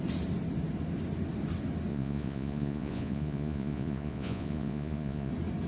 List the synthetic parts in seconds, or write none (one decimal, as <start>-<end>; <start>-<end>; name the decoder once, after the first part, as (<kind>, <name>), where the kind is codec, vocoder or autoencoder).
1.9-5.3 (vocoder, Vocos)